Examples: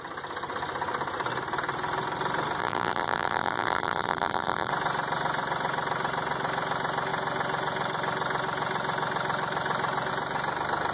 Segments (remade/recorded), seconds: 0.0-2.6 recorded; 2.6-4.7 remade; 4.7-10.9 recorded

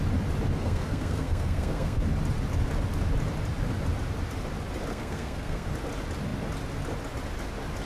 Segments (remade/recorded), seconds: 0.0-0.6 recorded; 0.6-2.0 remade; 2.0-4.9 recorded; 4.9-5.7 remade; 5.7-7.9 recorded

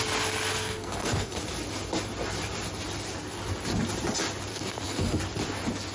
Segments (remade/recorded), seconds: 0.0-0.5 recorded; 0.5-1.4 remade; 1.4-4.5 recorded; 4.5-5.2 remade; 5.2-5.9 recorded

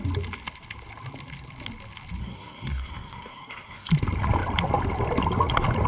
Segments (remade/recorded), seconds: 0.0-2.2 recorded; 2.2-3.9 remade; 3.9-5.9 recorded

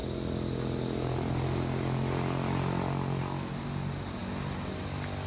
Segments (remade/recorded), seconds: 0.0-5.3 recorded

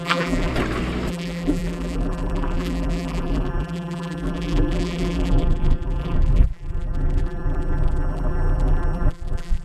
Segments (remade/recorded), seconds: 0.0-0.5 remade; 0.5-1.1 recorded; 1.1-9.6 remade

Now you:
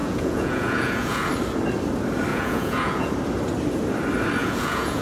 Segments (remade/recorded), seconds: 0.0-1.3 remade; 1.3-2.3 recorded; 2.3-3.1 remade; 3.1-4.4 recorded; 4.4-5.0 remade

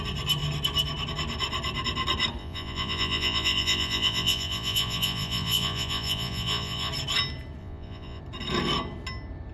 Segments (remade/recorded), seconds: 0.0-2.4 recorded; 2.4-6.9 remade; 6.9-7.6 recorded; 7.6-8.2 remade; 8.2-9.5 recorded